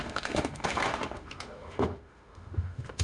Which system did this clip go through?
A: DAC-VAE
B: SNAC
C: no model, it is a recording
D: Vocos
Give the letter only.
A